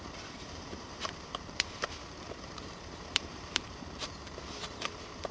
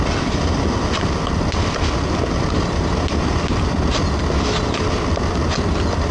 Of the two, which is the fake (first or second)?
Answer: first